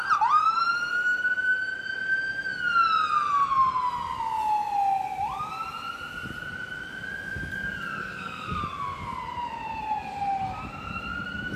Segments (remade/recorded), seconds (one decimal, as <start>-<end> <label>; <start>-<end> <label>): 0.0-8.0 recorded; 8.0-8.6 remade; 8.6-11.6 recorded